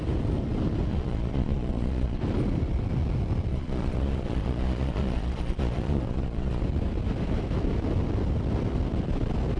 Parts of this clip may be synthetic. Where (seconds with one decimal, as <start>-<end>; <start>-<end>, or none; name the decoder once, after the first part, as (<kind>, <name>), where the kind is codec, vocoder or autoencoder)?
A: 0.9-2.2 (vocoder, Vocos); 3.5-6.6